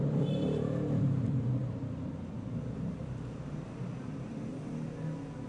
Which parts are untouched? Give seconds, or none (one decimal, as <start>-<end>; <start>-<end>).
4.5-5.5